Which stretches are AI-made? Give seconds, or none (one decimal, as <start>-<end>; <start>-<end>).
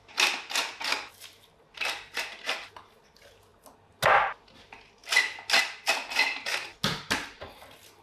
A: 1.1-2.2; 5.0-5.6